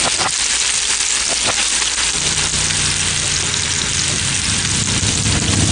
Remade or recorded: recorded